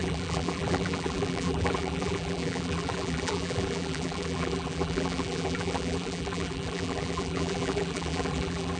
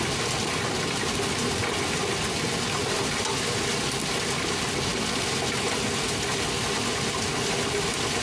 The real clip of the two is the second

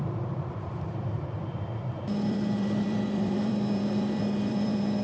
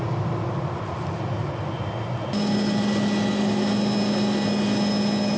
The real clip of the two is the second